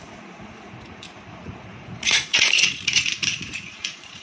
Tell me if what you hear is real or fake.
fake